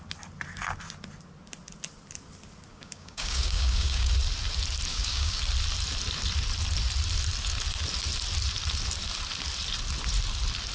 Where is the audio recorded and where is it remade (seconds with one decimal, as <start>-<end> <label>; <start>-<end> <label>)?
0.0-2.7 recorded; 2.7-4.1 remade; 4.1-4.9 recorded; 4.9-5.4 remade; 5.4-10.7 recorded